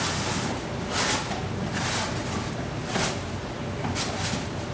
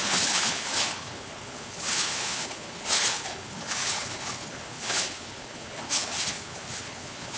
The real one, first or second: first